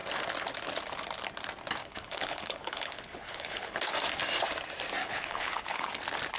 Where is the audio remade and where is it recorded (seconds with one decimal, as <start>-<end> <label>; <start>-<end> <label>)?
0.0-1.8 recorded; 1.8-3.9 remade; 3.9-5.0 recorded; 5.0-5.9 remade; 5.9-6.4 recorded